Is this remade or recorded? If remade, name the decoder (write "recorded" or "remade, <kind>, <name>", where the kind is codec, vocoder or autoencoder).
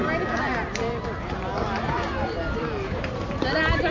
recorded